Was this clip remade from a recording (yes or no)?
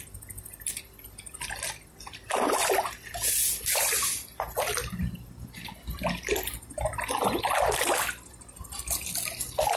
no